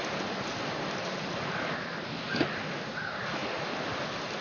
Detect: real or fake real